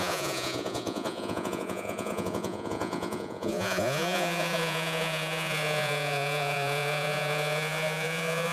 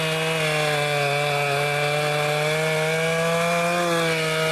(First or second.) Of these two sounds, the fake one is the first